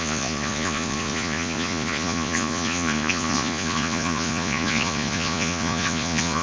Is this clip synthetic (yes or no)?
yes